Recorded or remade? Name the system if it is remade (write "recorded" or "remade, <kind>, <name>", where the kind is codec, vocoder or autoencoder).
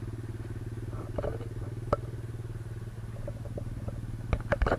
recorded